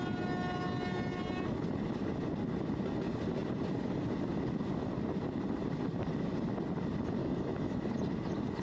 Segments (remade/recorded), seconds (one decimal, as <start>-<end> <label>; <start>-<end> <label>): 0.0-7.2 recorded; 7.2-7.9 remade; 7.9-8.6 recorded